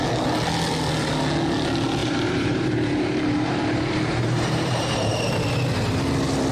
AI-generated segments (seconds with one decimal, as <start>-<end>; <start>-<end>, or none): 2.0-5.2